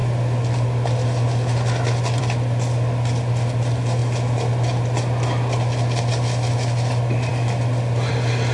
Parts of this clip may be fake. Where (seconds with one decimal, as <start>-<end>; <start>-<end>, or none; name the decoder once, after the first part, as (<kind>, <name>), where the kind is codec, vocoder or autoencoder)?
none